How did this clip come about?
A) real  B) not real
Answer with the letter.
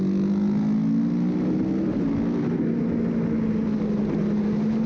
A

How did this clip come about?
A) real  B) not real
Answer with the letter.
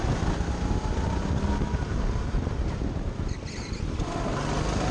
A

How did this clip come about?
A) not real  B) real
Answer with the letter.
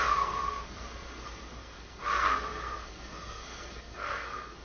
A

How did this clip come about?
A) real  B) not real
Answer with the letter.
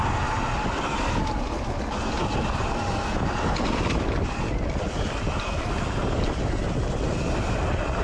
A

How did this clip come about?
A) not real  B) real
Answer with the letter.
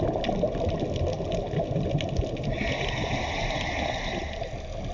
B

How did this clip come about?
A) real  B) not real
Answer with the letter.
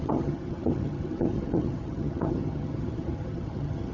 B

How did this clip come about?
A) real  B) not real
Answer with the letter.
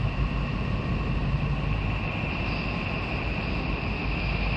A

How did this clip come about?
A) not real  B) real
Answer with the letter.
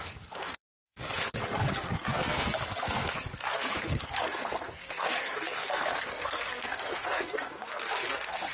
A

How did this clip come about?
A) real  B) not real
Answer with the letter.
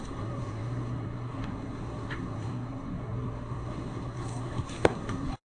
B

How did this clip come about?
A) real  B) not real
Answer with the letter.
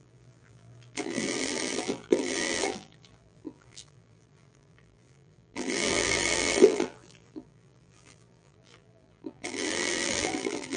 B